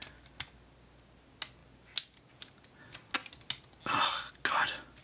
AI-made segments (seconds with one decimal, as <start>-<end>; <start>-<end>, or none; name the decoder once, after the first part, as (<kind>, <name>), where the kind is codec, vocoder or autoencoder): none